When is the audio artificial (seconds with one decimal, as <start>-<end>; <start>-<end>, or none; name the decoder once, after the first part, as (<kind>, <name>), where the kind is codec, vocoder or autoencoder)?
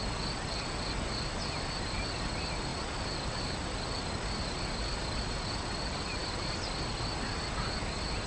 6.2-7.3 (vocoder, BigVGAN v2)